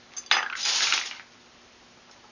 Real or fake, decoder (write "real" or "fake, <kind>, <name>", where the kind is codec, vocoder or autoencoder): real